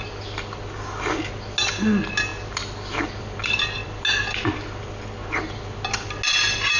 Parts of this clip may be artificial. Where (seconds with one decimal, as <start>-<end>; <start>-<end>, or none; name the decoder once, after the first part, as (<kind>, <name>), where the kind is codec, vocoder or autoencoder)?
none